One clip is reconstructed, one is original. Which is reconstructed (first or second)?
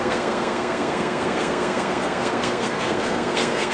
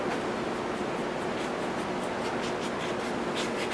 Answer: first